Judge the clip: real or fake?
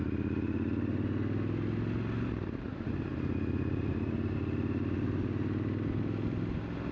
real